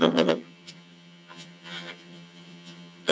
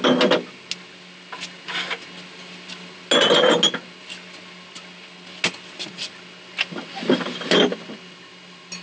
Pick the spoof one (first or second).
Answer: first